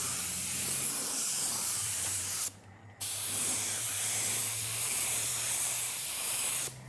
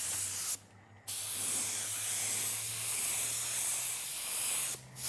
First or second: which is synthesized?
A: first